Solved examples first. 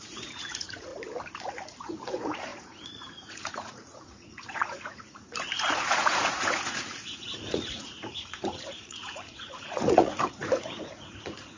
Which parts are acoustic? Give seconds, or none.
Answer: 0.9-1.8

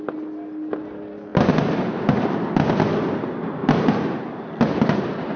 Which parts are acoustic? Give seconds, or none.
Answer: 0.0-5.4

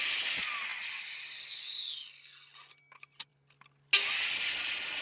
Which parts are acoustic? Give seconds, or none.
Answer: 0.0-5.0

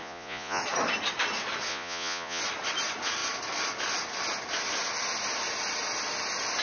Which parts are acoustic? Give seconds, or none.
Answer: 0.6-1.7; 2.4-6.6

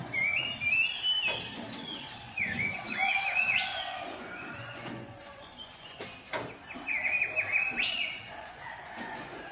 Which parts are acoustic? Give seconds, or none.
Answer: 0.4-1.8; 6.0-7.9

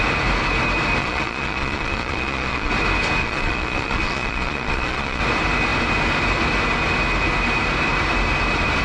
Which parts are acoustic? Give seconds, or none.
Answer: 0.0-1.0; 2.7-3.2; 5.2-8.8

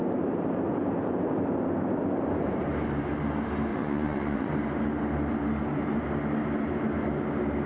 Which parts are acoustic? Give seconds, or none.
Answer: 0.0-3.7; 4.5-7.7